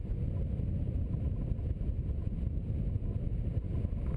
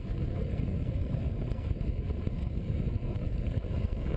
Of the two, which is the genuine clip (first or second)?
first